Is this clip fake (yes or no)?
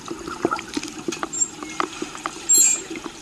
no